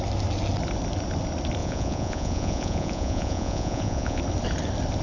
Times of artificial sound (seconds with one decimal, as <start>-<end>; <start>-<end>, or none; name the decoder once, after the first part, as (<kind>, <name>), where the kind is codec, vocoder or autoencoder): 1.6-4.2 (vocoder, Vocos)